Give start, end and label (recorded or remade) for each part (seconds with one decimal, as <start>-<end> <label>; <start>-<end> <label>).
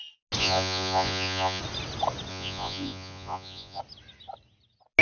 0.0-0.4 recorded; 0.4-1.6 remade; 1.6-2.3 recorded; 2.3-3.8 remade; 3.8-5.0 recorded